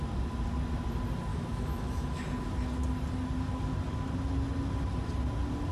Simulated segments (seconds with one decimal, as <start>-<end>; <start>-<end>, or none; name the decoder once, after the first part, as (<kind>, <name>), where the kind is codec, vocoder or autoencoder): 1.3-2.2 (autoencoder, DAC-VAE)